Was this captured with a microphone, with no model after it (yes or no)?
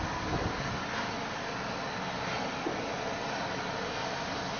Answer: yes